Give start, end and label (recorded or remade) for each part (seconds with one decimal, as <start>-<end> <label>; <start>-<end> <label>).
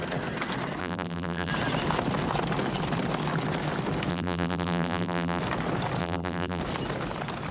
0.0-0.8 recorded; 0.8-1.5 remade; 1.5-4.1 recorded; 4.1-5.4 remade; 5.4-6.0 recorded; 6.0-6.6 remade; 6.6-7.5 recorded